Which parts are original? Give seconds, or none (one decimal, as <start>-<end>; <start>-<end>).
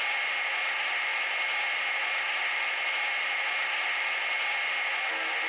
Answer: 0.0-5.5